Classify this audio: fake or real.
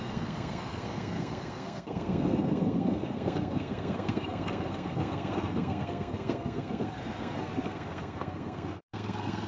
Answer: fake